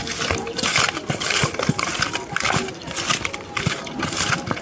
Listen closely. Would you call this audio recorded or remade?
recorded